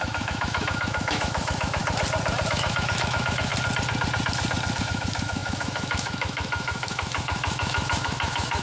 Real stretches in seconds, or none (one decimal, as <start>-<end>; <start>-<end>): 1.8-2.5; 3.5-4.8